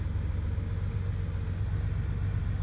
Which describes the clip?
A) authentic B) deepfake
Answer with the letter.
A